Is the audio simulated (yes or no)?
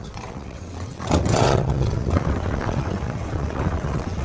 yes